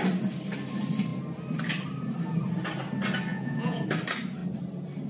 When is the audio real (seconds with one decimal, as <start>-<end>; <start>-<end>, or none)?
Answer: 0.0-3.3; 3.8-5.1